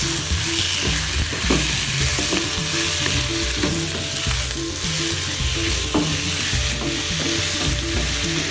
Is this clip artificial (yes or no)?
no